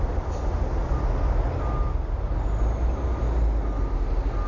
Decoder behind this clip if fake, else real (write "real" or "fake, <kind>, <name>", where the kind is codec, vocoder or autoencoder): real